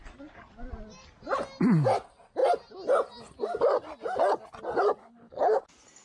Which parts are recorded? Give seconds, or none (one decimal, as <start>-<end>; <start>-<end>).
0.0-5.0; 5.6-6.0